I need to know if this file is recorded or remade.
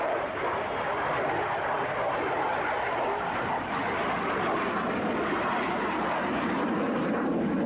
recorded